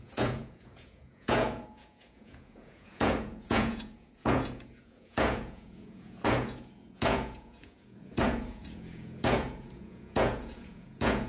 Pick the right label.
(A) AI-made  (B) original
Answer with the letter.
A